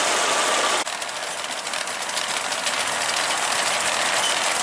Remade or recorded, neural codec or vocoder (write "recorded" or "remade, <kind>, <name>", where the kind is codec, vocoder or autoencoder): recorded